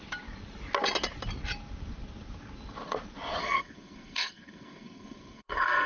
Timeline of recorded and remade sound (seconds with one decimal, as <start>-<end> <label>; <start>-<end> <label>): 0.0-3.4 recorded; 3.4-5.9 remade